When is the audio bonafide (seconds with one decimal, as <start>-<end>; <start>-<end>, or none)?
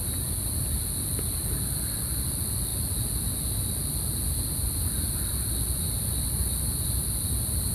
0.0-7.7